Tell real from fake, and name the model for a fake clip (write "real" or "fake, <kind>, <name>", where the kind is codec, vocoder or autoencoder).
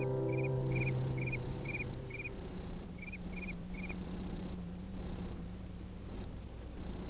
fake, vocoder, BigVGAN v2